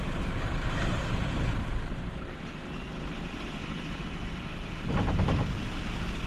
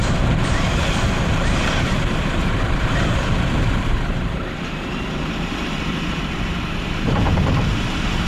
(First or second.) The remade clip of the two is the second